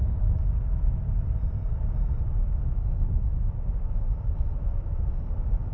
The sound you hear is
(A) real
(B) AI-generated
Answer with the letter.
A